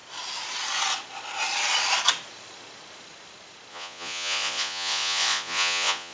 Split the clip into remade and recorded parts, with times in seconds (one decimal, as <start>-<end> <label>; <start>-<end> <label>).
0.0-3.7 recorded; 3.7-6.1 remade